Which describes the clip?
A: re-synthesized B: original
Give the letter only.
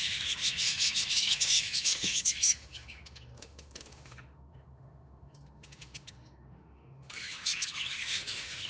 A